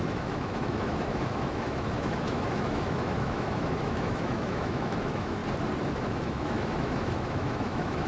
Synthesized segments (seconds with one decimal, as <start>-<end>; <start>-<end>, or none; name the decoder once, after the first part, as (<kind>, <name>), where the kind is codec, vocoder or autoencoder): 0.0-5.4 (autoencoder, DAC-VAE); 5.9-8.1